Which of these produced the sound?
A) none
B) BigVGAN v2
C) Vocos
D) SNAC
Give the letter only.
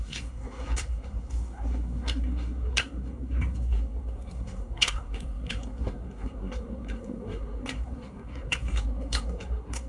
D